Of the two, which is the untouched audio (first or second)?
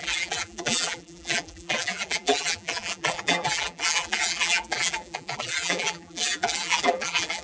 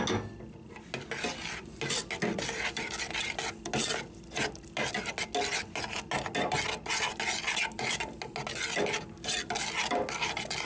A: second